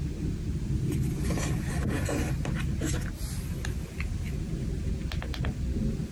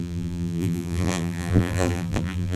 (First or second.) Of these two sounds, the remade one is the second